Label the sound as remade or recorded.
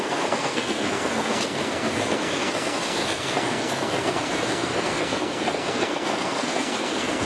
remade